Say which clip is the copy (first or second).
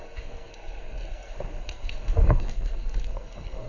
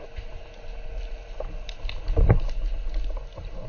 first